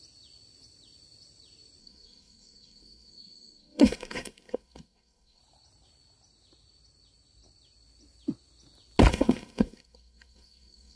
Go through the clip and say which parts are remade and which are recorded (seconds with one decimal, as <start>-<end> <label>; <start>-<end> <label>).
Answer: 0.0-1.8 recorded; 1.8-5.4 remade; 5.4-9.1 recorded; 9.1-11.0 remade